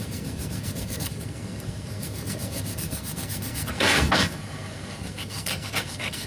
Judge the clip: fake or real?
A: fake